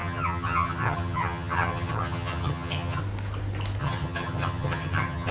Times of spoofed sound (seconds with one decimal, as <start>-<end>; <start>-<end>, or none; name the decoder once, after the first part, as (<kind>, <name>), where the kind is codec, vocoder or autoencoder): 0.0-3.0 (vocoder, HiFi-GAN); 3.8-5.3